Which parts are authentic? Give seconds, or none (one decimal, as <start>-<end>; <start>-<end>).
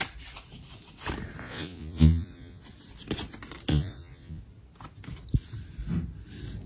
0.0-1.4; 2.6-3.7; 4.4-6.7